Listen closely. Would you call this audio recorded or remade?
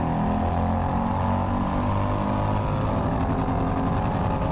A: recorded